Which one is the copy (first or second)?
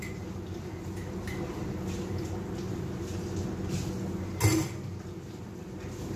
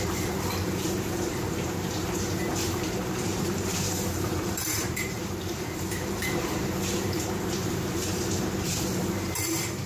second